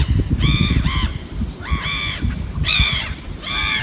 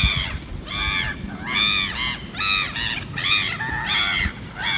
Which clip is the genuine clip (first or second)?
second